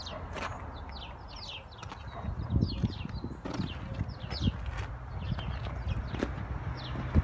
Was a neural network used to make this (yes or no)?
no